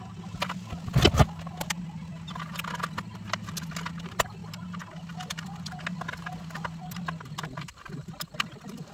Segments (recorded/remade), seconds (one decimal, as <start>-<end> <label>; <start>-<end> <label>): 0.0-8.9 recorded

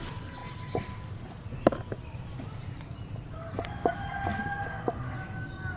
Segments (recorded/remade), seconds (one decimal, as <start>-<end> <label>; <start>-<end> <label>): 0.0-0.4 remade; 0.4-2.5 recorded; 2.5-4.3 remade; 4.3-5.8 recorded

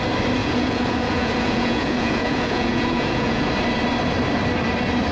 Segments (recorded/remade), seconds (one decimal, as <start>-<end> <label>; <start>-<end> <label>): 0.0-0.4 recorded; 0.4-3.5 remade; 3.5-5.1 recorded

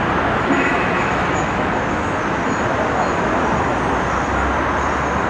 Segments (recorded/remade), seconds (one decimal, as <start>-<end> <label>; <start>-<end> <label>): 0.0-0.7 recorded; 0.7-1.7 remade; 1.7-5.3 recorded

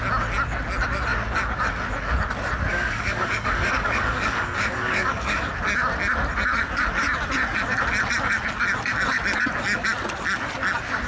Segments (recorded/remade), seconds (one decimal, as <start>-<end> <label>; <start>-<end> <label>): 0.0-2.7 recorded; 2.7-5.5 remade; 5.5-11.1 recorded

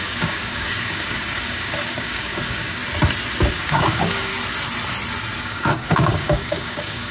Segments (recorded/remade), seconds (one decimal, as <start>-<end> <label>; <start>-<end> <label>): 0.0-2.8 remade; 2.8-3.5 recorded; 3.5-4.3 remade; 4.3-5.4 recorded; 5.4-7.1 remade

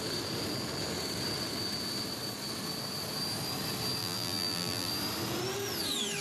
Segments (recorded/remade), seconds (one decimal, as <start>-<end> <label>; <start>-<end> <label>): 0.0-4.0 recorded; 4.0-4.9 remade; 4.9-6.2 recorded